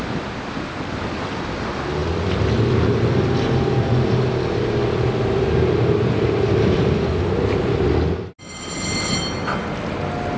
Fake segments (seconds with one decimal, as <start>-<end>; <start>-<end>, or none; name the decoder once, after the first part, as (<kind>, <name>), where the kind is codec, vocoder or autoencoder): none